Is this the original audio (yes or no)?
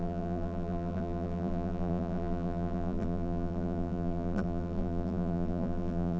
no